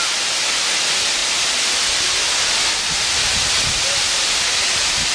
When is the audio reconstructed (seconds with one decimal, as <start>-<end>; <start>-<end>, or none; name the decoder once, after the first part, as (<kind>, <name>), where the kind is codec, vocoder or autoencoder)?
none